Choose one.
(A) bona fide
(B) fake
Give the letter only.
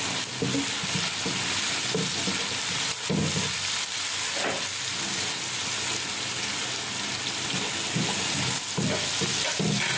A